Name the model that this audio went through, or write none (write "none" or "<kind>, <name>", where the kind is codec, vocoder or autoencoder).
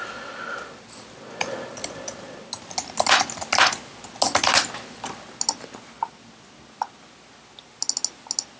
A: none